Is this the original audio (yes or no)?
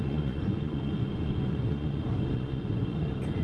no